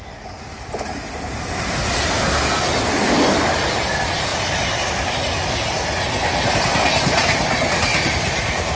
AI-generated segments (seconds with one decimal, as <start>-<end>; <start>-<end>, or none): 7.9-8.4

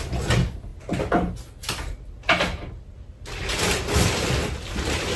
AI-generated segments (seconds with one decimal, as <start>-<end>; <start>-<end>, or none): 0.0-0.7; 3.8-5.2